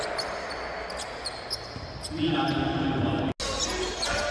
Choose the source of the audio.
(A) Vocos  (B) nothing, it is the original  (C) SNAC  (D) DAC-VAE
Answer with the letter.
B